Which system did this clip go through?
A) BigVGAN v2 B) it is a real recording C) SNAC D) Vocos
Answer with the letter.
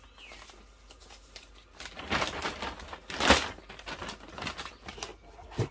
B